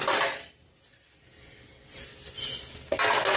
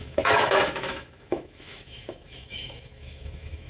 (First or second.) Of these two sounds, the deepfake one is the second